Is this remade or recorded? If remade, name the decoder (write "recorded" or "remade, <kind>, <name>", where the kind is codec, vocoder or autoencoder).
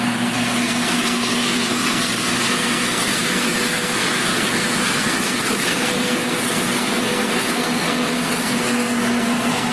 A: remade, codec, SNAC